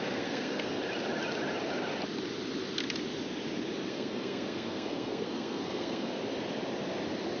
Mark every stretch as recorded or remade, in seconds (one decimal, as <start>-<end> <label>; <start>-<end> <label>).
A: 0.0-0.8 remade; 0.8-3.9 recorded; 3.9-6.2 remade; 6.2-7.4 recorded